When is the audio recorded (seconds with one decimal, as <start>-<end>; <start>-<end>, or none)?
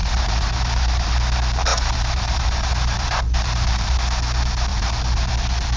1.1-1.7; 3.9-4.7; 5.3-5.8